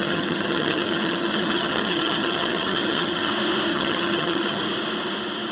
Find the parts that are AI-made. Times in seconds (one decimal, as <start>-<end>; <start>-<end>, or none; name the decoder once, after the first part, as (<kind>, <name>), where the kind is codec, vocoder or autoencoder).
0.0-3.3 (vocoder, HiFi-GAN); 3.7-4.6